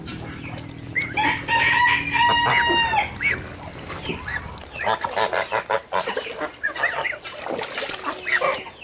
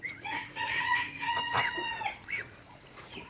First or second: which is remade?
second